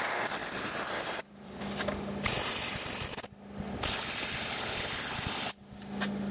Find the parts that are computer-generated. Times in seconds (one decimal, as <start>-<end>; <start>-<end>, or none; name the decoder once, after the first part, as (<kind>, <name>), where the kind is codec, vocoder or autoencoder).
0.4-1.6 (vocoder, BigVGAN v2)